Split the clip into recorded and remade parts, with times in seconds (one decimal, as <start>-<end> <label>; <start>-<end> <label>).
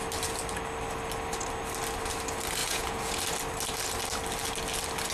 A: 0.0-2.6 recorded; 2.6-3.2 remade; 3.2-5.1 recorded